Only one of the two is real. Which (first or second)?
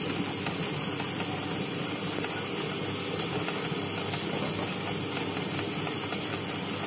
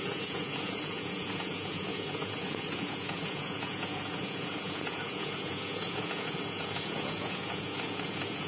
first